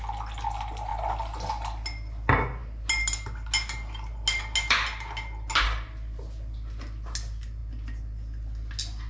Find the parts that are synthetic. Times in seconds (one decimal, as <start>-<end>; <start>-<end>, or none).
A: none